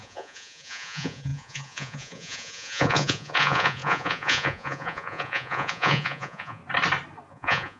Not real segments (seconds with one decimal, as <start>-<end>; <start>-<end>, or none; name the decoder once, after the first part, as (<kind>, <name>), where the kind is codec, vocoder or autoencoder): 0.0-6.6 (vocoder, Vocos); 7.3-7.8